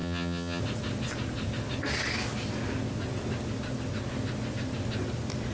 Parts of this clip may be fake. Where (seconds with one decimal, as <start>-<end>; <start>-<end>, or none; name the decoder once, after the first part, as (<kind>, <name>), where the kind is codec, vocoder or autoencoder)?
0.0-0.6 (vocoder, HiFi-GAN)